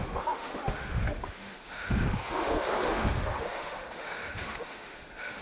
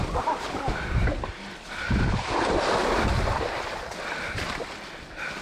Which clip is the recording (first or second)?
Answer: second